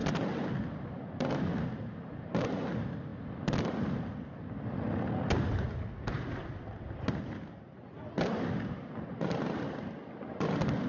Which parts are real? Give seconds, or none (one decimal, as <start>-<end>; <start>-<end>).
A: 0.0-10.9